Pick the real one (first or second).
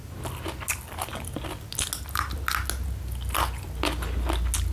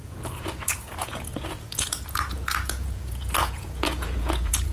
first